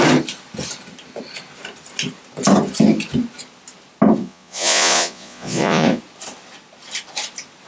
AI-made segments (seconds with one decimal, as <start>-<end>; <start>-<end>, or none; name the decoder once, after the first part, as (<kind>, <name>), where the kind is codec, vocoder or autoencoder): 4.2-6.0 (vocoder, Vocos)